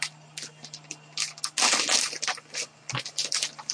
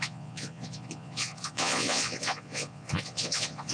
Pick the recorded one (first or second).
first